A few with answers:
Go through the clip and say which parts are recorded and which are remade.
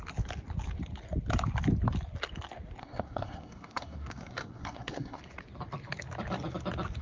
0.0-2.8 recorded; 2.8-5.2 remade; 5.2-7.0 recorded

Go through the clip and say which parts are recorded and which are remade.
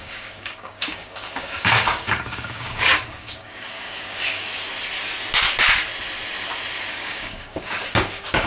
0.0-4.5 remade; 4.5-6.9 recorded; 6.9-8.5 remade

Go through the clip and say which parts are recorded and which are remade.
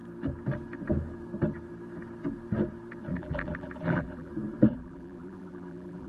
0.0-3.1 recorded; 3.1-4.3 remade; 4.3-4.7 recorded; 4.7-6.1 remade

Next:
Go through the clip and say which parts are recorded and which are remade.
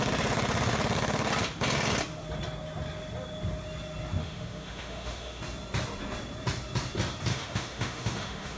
0.0-4.2 recorded; 4.2-5.4 remade; 5.4-7.3 recorded; 7.3-8.6 remade